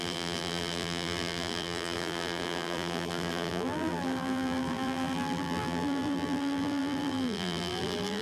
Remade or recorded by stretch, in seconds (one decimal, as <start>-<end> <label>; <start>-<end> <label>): 0.0-8.2 remade